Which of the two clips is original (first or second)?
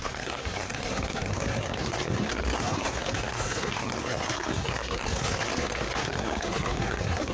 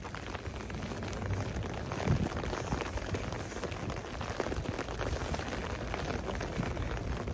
second